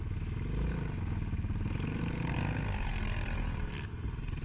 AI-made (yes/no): no